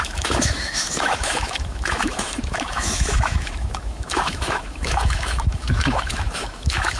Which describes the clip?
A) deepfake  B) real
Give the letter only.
A